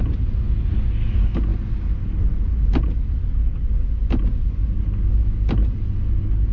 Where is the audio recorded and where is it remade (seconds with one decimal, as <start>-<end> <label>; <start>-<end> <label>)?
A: 0.0-6.5 recorded